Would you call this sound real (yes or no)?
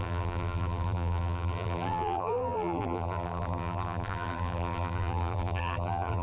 no